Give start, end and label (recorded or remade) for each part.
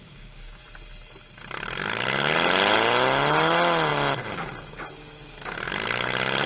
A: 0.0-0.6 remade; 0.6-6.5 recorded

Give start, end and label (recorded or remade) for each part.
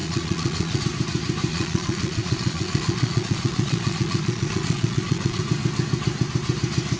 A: 0.0-0.8 remade; 0.8-1.5 recorded; 1.5-5.4 remade; 5.4-7.0 recorded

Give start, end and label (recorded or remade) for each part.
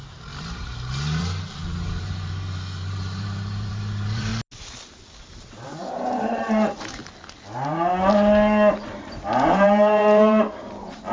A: 0.0-4.3 remade; 4.3-5.2 recorded; 5.2-7.0 remade; 7.0-8.9 recorded; 8.9-11.1 remade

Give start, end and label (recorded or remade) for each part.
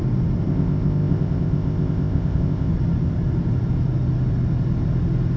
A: 0.0-0.5 recorded; 0.5-2.7 remade; 2.7-5.4 recorded